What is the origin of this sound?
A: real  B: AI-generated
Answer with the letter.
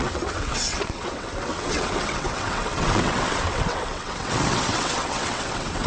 B